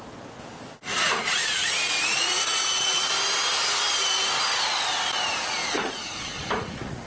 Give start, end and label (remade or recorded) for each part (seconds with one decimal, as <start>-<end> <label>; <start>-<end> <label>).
0.0-0.9 recorded; 0.9-1.7 remade; 1.7-2.1 recorded; 2.1-3.1 remade; 3.1-5.6 recorded; 5.6-7.1 remade